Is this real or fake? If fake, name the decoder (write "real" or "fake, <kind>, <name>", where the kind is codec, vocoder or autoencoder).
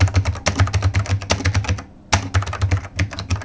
real